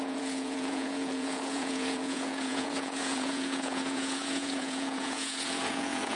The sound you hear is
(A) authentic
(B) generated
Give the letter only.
B